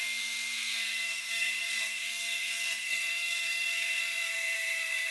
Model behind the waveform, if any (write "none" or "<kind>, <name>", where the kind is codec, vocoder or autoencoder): codec, SNAC